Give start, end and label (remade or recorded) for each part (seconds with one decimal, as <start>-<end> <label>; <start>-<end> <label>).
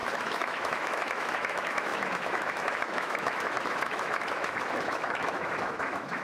0.0-6.2 remade